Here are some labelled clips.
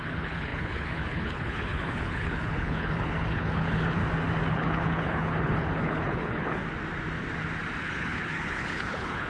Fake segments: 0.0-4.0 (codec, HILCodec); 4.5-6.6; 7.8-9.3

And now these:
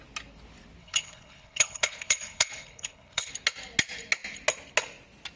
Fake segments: 0.8-3.3 (codec, HILCodec)

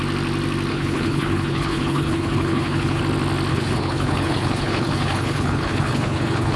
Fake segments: 0.7-3.0 (codec, HILCodec); 3.5-6.6

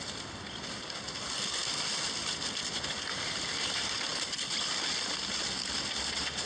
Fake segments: none

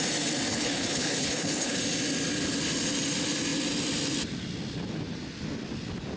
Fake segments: 0.5-1.8 (codec, HILCodec)

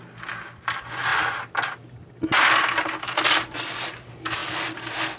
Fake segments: none

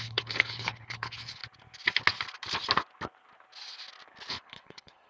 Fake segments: 0.0-1.4 (codec, HILCodec); 4.3-5.1

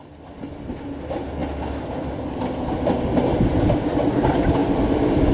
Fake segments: none